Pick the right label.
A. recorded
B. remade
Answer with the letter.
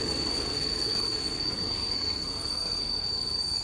B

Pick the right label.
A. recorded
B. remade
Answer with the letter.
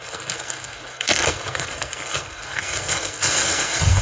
B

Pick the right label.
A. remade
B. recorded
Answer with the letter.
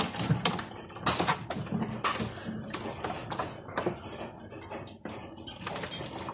B